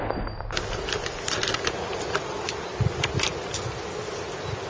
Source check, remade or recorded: recorded